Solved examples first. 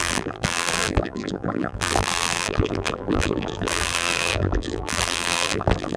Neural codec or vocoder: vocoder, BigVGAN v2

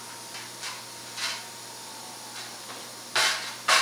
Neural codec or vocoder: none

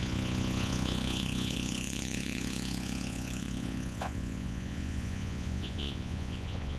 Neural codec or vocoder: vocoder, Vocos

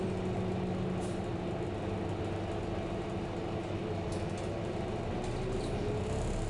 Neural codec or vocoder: none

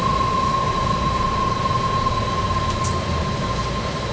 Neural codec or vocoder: none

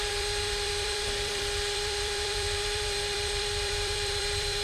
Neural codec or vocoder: vocoder, BigVGAN v2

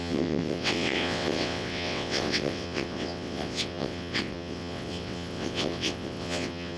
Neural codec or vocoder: vocoder, WaveNeXt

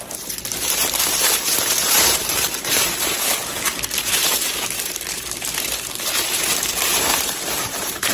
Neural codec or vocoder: vocoder, BigVGAN v2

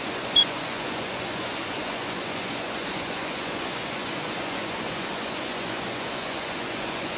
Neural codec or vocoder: vocoder, Vocos